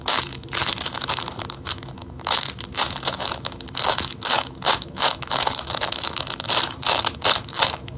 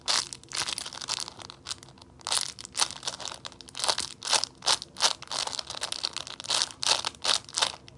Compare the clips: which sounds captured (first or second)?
second